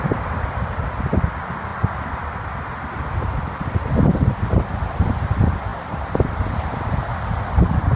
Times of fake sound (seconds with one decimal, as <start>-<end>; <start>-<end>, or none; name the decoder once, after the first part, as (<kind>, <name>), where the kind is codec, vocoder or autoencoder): 5.7-6.3 (vocoder, BigVGAN v2)